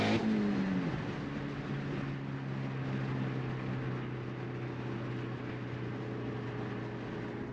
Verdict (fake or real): real